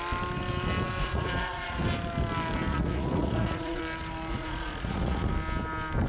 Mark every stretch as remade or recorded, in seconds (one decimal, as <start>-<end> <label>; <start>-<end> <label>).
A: 0.0-1.0 recorded; 1.0-1.8 remade; 1.8-2.7 recorded; 2.7-3.8 remade; 3.8-4.3 recorded; 4.3-5.3 remade; 5.3-6.1 recorded